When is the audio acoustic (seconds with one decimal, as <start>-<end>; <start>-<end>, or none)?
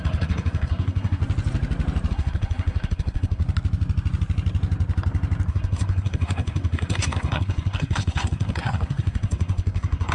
1.2-2.1; 3.4-5.5